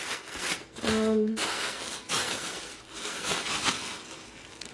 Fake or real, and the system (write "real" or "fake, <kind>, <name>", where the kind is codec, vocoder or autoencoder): fake, codec, SNAC